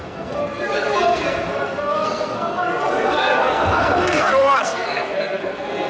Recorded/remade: remade